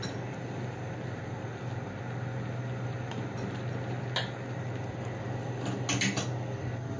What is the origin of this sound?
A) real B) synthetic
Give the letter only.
A